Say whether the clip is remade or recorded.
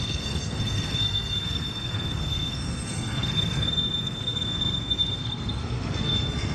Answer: remade